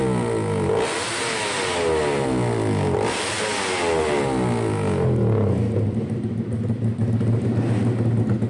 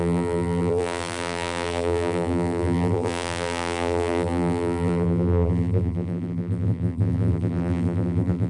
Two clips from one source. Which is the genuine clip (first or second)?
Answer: first